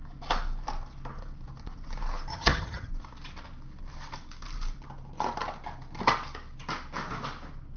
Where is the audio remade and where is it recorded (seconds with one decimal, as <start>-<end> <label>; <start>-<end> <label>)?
0.0-2.3 recorded; 2.3-2.9 remade; 2.9-7.8 recorded